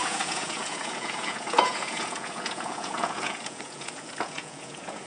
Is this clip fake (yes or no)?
yes